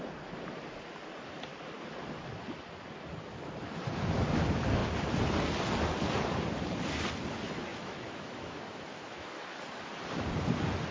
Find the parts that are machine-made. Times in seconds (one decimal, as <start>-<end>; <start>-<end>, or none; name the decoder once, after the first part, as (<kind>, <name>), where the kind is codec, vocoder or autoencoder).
7.7-9.6 (autoencoder, DAC-VAE)